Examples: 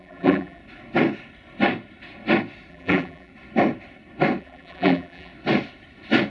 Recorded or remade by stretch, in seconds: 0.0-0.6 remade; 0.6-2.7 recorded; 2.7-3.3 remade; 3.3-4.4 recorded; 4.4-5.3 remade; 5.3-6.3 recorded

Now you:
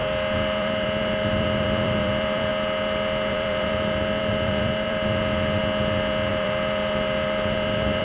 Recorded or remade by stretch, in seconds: 0.0-0.6 recorded; 0.6-2.5 remade; 2.5-3.3 recorded; 3.3-5.6 remade; 5.6-6.3 recorded; 6.3-8.0 remade

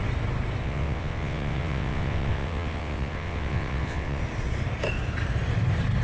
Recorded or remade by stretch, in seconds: 0.0-0.6 recorded; 0.6-4.2 remade; 4.2-6.0 recorded

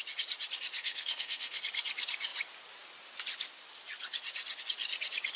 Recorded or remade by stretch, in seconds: 0.0-0.8 recorded; 0.8-1.6 remade; 1.6-5.4 recorded

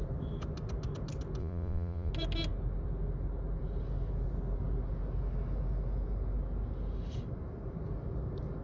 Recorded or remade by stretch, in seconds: 0.0-1.4 recorded; 1.4-2.1 remade; 2.1-8.6 recorded

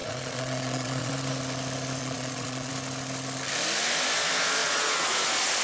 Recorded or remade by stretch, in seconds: 0.0-1.1 remade; 1.1-2.0 recorded; 2.0-2.7 remade; 2.7-4.6 recorded; 4.6-5.1 remade; 5.1-5.6 recorded

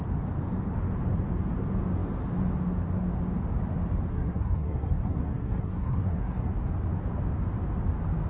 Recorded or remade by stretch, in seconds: 0.0-4.1 recorded; 4.1-6.5 remade; 6.5-8.3 recorded

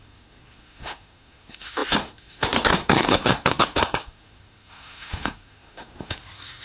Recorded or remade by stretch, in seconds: 0.0-6.6 remade